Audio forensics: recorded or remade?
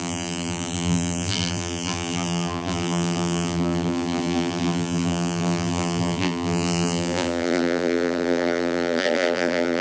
remade